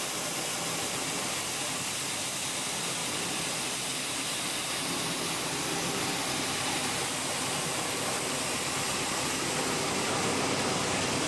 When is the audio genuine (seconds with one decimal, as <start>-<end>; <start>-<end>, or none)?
3.0-7.0